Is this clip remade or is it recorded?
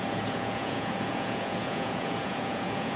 remade